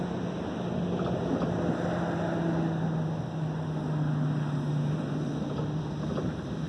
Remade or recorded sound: recorded